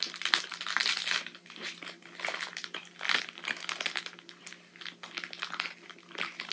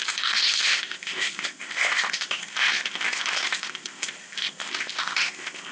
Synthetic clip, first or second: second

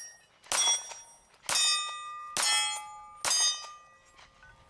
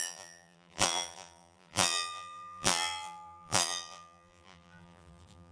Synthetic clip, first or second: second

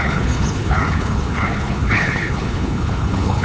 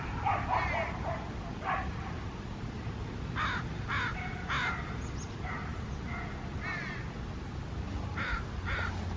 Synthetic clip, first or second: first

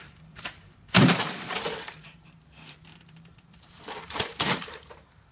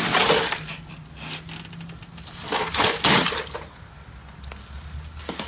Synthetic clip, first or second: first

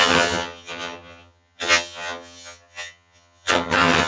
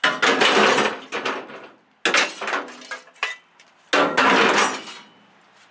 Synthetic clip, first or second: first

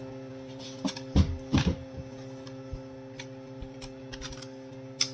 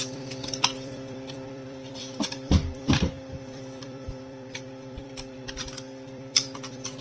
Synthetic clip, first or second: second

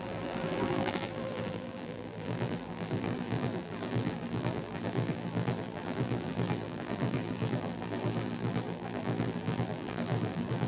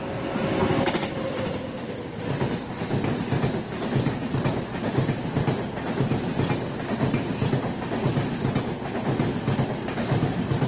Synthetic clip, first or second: first